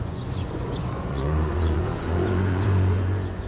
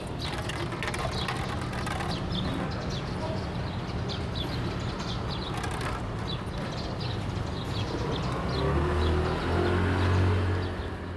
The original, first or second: second